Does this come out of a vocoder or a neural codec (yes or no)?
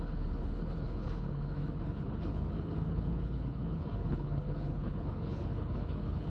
yes